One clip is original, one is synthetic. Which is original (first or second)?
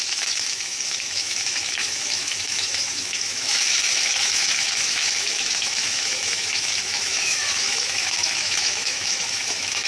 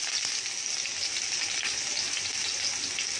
second